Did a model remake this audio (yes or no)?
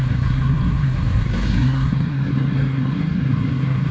yes